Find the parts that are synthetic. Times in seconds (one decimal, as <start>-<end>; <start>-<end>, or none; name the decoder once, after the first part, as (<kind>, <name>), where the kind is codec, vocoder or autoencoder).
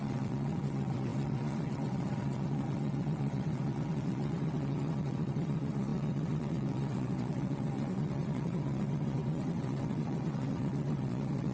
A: 0.0-11.5 (vocoder, WaveNeXt)